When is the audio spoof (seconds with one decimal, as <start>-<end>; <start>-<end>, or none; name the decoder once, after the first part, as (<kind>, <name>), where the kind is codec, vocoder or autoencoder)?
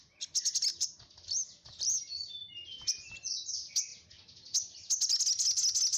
0.7-1.2 (vocoder, BigVGAN v2)